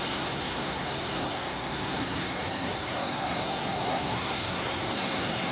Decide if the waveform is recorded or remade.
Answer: remade